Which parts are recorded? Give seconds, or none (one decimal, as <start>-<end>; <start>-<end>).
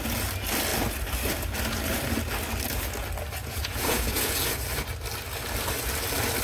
0.0-3.4; 4.6-6.4